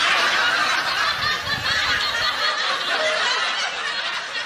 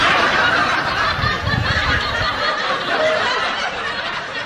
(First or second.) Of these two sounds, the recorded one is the first